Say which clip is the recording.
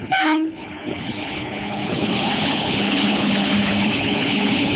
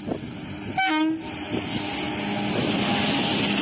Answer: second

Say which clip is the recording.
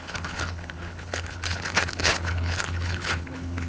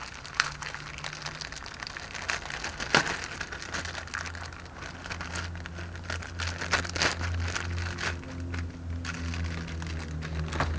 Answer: second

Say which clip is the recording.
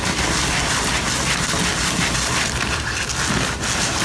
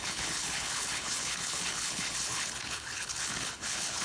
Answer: first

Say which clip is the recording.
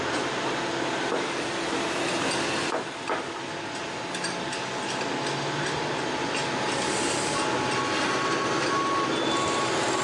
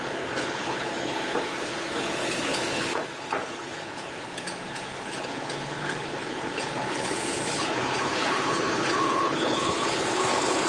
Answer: first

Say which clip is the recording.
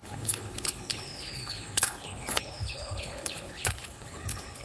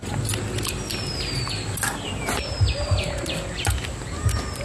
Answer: second